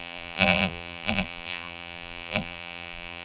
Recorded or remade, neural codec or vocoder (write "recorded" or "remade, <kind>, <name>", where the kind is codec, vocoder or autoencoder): remade, vocoder, BigVGAN v2